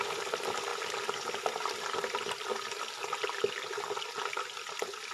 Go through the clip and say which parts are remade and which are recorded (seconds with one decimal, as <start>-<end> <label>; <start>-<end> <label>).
0.0-5.1 recorded